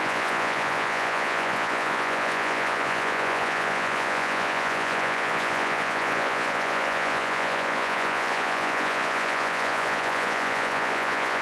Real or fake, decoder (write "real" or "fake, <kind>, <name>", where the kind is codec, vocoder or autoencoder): fake, vocoder, Vocos